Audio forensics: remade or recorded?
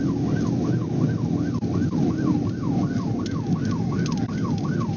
recorded